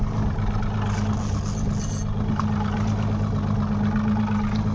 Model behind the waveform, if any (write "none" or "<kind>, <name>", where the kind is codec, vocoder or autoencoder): none